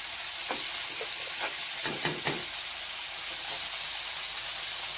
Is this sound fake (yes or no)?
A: no